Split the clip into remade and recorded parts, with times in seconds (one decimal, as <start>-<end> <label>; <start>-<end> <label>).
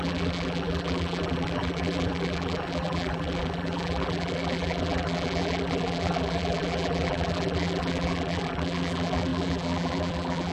0.0-10.5 remade